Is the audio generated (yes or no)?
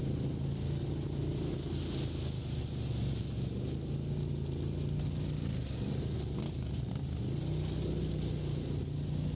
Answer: no